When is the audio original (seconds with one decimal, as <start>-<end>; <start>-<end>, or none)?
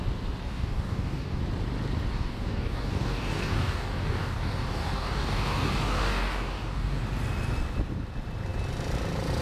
0.0-0.4; 1.4-2.1; 7.0-9.4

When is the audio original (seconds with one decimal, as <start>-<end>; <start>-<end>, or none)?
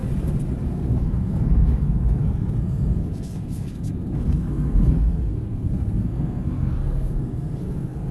0.0-0.7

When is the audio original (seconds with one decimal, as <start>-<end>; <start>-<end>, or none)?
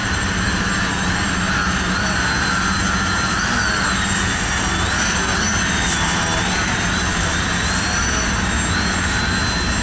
0.7-7.1; 7.8-9.8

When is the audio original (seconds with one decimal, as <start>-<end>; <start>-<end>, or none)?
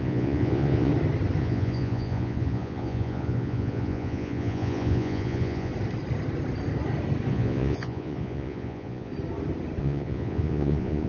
0.9-1.4; 5.7-7.3; 9.1-9.8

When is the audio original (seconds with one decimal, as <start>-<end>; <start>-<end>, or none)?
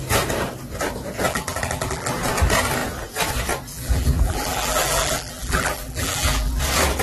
0.0-1.3; 2.1-3.7; 6.6-7.0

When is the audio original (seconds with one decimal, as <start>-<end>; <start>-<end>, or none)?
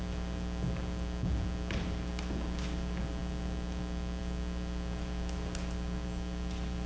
0.0-6.9